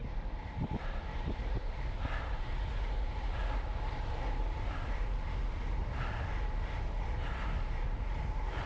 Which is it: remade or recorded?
recorded